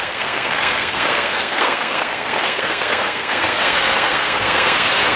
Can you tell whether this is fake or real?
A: fake